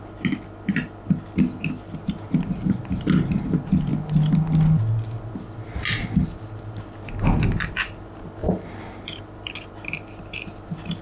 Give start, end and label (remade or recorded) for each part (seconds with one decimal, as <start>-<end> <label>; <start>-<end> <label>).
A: 0.0-8.4 recorded; 8.4-9.7 remade; 9.7-11.0 recorded